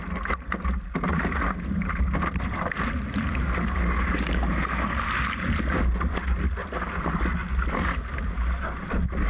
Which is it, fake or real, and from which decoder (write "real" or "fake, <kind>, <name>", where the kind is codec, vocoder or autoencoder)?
real